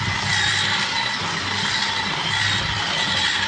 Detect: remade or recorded recorded